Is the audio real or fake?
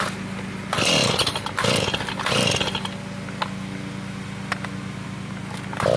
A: real